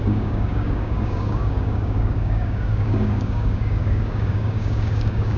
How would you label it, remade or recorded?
remade